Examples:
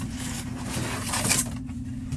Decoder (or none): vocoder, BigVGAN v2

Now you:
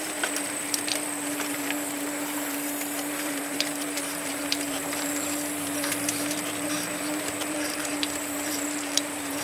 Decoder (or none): vocoder, BigVGAN v2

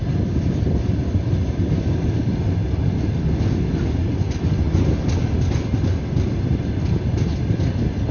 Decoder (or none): none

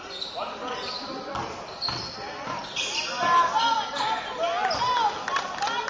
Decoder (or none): none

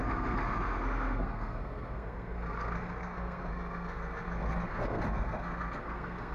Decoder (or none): codec, SNAC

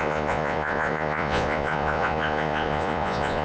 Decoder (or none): vocoder, Vocos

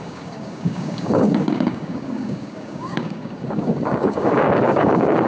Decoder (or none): codec, DAC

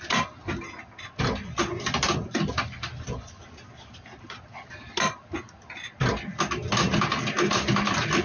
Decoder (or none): none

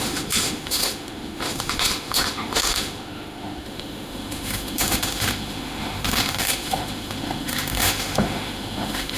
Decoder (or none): autoencoder, DAC-VAE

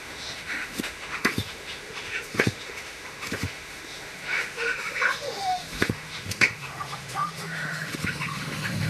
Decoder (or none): autoencoder, DAC-VAE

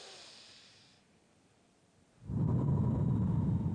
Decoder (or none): none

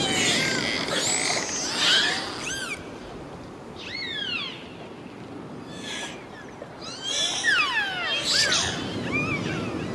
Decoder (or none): none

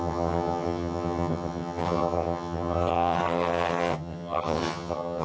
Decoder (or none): vocoder, HiFi-GAN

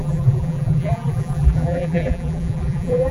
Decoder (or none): vocoder, BigVGAN v2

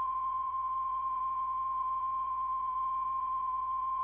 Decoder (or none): vocoder, Vocos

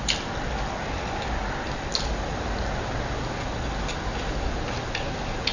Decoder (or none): none